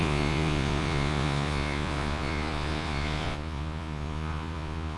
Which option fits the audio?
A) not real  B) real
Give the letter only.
A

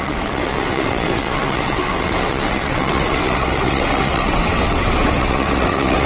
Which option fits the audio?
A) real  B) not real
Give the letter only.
B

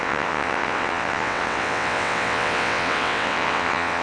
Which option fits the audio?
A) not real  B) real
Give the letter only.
A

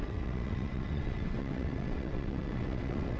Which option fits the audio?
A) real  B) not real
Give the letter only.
B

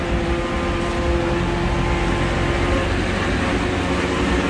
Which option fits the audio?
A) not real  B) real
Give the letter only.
B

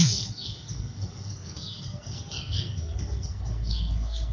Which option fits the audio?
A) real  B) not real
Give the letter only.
B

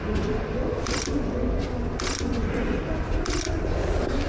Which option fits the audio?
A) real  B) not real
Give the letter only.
A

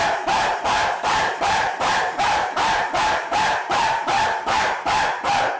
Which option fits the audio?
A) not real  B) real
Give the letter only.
A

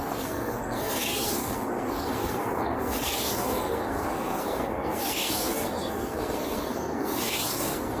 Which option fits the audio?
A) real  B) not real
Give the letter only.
B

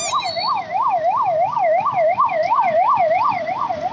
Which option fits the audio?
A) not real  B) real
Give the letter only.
B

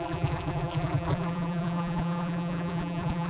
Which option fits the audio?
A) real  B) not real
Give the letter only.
B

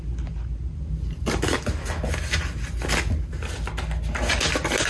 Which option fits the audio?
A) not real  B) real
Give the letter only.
B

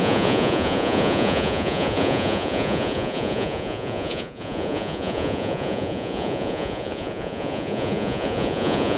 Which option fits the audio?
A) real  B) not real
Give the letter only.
B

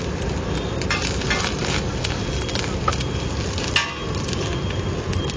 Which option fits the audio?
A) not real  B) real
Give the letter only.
B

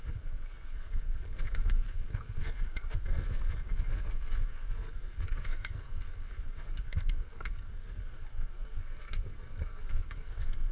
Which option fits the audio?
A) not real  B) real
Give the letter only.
A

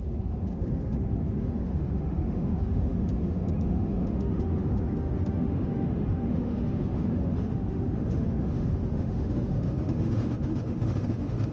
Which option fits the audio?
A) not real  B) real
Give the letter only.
A